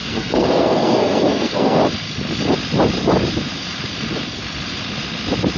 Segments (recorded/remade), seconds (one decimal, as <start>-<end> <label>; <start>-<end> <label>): 0.0-1.8 remade; 1.8-5.6 recorded